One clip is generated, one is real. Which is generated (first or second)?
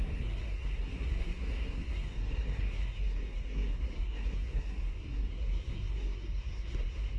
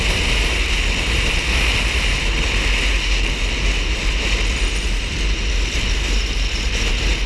first